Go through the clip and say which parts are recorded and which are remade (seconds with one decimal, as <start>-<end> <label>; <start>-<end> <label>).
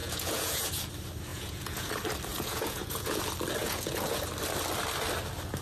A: 0.0-0.9 remade; 0.9-1.3 recorded; 1.3-1.9 remade; 1.9-2.3 recorded; 2.3-3.2 remade; 3.2-3.6 recorded; 3.6-4.2 remade; 4.2-5.6 recorded